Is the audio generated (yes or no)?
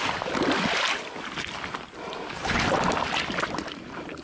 no